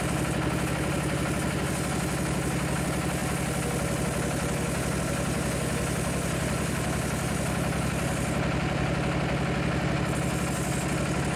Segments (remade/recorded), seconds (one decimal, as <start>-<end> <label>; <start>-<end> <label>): 0.0-11.4 recorded